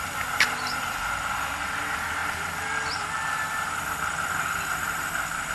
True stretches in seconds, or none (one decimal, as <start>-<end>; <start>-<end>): 0.0-5.5